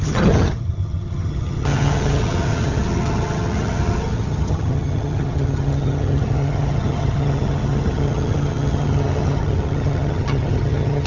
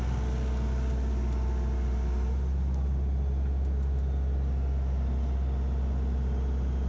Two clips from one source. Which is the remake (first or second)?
first